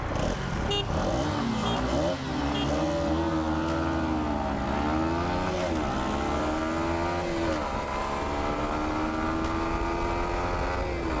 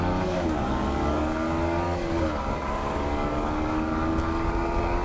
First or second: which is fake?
second